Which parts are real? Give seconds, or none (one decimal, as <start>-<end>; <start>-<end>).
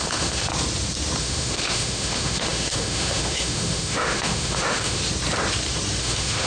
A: 0.5-1.2; 5.0-6.0